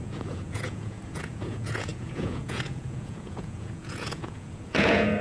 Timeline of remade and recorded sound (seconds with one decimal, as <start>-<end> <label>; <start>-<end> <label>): 0.0-5.2 remade